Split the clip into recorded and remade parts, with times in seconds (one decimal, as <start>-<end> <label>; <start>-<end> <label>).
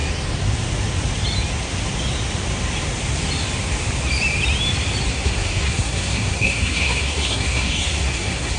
0.0-5.1 recorded; 5.1-8.6 remade